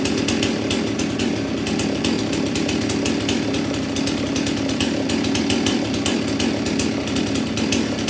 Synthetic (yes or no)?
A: no